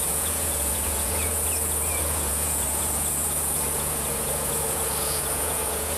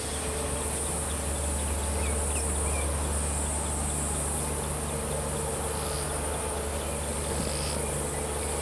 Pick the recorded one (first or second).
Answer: second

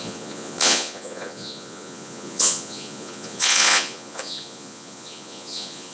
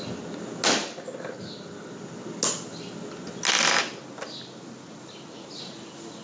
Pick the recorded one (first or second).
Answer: second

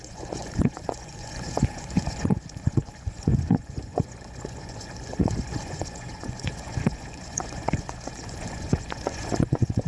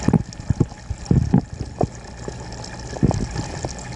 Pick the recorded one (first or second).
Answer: second